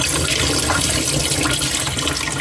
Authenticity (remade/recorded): recorded